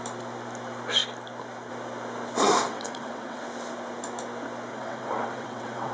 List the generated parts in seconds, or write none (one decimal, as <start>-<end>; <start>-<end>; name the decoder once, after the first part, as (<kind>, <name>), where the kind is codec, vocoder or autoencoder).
2.7-3.4 (vocoder, WaveNeXt); 4.7-5.9